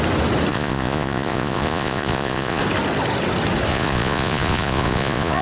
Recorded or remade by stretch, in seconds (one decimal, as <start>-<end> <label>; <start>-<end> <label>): 0.0-0.5 recorded; 0.5-2.6 remade; 2.6-3.7 recorded; 3.7-5.4 remade